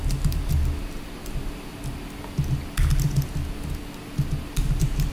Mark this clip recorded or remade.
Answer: recorded